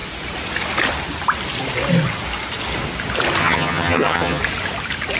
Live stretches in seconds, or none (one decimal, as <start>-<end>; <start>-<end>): 0.0-3.4; 4.4-5.2